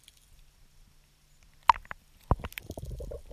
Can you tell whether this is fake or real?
real